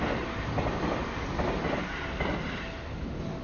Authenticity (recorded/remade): recorded